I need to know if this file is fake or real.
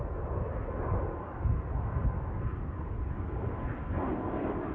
real